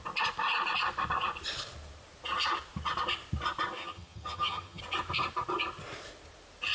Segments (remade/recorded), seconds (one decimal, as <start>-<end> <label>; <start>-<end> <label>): 0.0-3.8 recorded; 3.8-4.8 remade; 4.8-6.7 recorded